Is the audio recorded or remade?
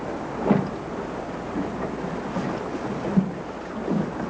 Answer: recorded